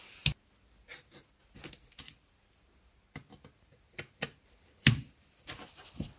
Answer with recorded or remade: recorded